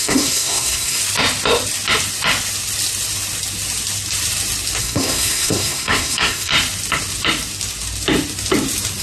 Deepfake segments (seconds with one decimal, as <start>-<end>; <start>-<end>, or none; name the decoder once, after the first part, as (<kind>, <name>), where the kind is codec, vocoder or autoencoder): 0.0-1.0 (codec, SNAC); 4.8-6.5